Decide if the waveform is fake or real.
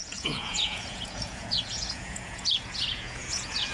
fake